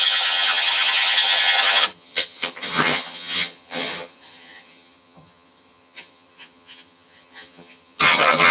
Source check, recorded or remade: remade